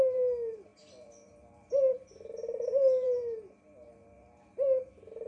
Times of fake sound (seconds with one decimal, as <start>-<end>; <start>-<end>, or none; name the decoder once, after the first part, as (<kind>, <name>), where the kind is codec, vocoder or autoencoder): 0.0-5.3 (vocoder, BigVGAN v2)